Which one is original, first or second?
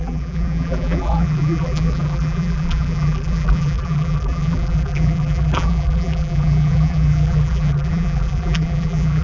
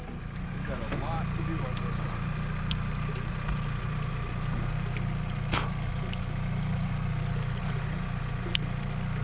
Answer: second